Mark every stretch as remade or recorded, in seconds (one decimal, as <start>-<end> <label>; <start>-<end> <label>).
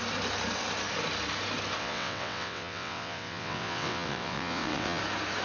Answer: 0.0-1.8 recorded; 1.8-5.0 remade; 5.0-5.4 recorded